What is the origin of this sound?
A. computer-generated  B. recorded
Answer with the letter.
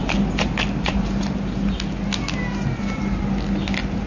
B